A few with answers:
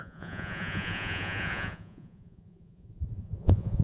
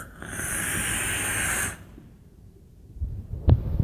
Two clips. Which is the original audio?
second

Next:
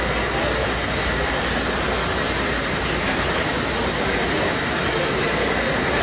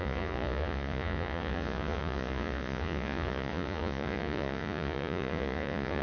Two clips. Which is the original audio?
first